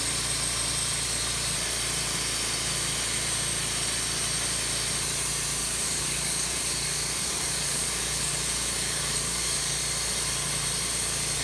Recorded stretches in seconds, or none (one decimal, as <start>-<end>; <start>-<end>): 0.0-5.6; 9.8-11.4